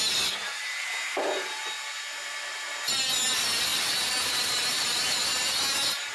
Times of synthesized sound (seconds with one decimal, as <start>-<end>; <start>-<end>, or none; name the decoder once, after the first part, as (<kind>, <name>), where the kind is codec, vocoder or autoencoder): 0.4-1.2 (vocoder, BigVGAN v2); 3.7-5.6